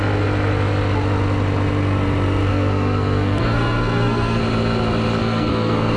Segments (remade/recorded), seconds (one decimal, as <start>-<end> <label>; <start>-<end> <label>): 0.0-2.5 recorded; 2.5-4.4 remade; 4.4-5.2 recorded; 5.2-6.0 remade